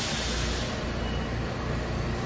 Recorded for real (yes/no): yes